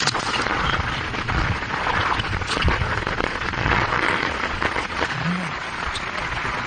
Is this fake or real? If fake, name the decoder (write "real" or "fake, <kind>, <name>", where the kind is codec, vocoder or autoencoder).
fake, vocoder, Vocos